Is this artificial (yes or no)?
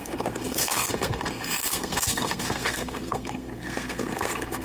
yes